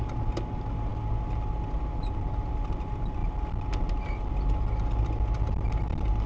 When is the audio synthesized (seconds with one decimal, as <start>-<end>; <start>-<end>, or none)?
none